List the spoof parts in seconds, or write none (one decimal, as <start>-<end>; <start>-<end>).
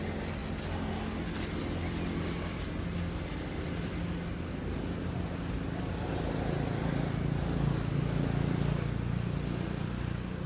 none